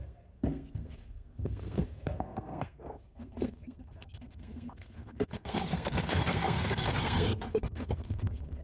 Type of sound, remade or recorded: remade